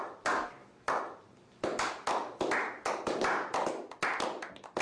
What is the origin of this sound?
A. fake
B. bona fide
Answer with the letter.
B